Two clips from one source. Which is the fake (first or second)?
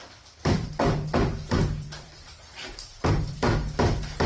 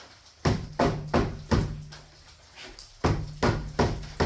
first